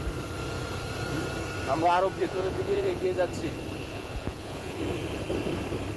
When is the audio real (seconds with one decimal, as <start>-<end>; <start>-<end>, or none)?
0.0-2.2; 3.0-3.9; 4.8-6.0